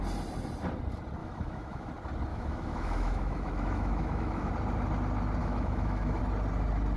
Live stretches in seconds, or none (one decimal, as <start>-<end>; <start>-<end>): 0.0-1.2; 1.9-2.3; 4.5-5.4; 6.2-7.0